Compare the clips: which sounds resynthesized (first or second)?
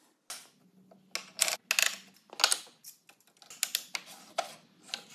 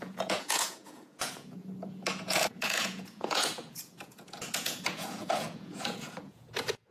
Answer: second